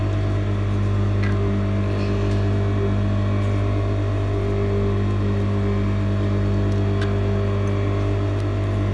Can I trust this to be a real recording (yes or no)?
yes